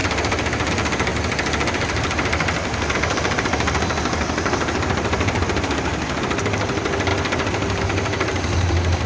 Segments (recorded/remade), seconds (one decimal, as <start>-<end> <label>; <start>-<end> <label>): 0.0-1.1 remade; 1.1-6.2 recorded; 6.2-7.1 remade; 7.1-7.8 recorded; 7.8-9.1 remade